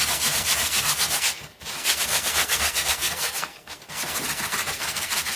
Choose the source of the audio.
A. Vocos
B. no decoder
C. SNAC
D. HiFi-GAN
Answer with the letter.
C